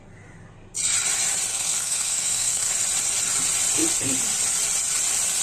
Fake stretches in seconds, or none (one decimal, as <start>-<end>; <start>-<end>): 1.5-2.7